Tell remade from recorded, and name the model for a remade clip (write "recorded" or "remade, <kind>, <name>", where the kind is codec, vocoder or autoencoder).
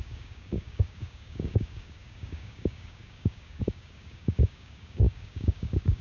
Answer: remade, codec, DAC